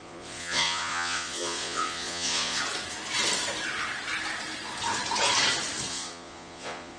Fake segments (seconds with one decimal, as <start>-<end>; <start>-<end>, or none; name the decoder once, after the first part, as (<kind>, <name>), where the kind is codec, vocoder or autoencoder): 0.0-2.6 (vocoder, Vocos); 5.9-7.0